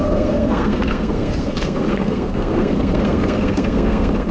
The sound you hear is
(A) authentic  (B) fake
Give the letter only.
B